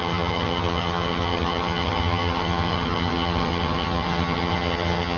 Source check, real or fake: fake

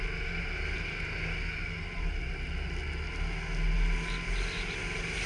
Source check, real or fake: real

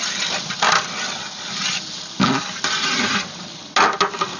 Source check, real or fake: real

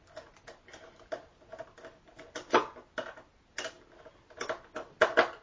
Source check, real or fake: real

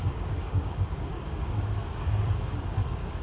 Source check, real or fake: fake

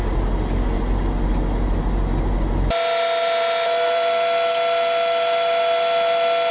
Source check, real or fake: real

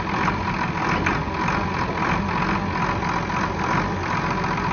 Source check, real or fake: real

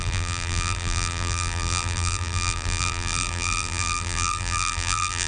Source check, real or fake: fake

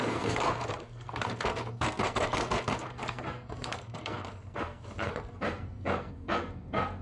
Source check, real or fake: fake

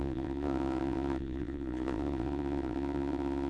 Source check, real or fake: fake